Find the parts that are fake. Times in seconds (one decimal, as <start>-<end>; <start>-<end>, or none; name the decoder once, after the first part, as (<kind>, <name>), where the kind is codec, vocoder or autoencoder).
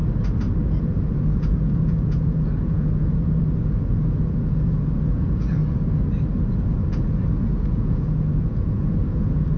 0.8-5.6 (vocoder, Vocos); 6.7-9.6